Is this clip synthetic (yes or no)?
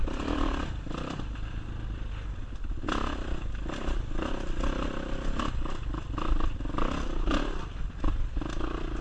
no